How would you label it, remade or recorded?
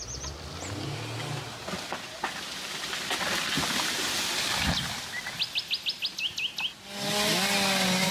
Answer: recorded